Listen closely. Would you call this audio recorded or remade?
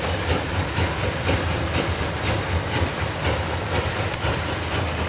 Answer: recorded